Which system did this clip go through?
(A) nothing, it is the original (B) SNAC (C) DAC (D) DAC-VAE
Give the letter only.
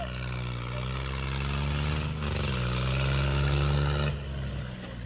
A